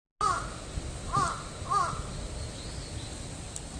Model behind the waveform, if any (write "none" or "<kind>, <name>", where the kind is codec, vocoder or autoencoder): none